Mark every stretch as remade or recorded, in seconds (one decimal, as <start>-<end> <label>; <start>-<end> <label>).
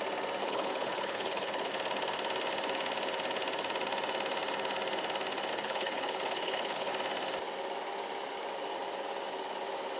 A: 0.0-0.4 recorded; 0.4-1.7 remade; 1.7-5.5 recorded; 5.5-6.9 remade; 6.9-10.0 recorded